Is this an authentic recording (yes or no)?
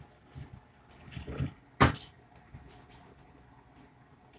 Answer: yes